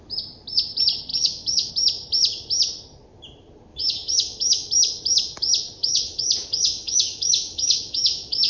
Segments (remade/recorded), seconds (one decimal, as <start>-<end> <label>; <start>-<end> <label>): 0.0-1.1 recorded; 1.1-1.7 remade; 1.7-3.7 recorded; 3.7-4.7 remade; 4.7-5.8 recorded; 5.8-8.5 remade